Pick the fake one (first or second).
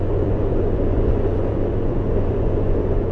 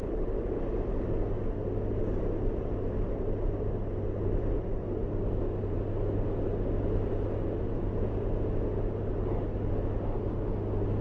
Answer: first